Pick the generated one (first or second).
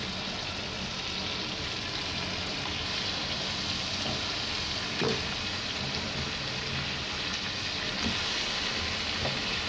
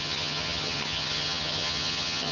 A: second